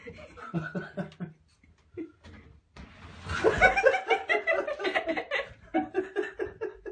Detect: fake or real real